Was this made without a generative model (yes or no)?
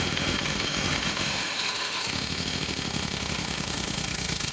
no